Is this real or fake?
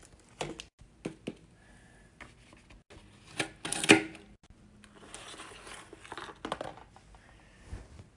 real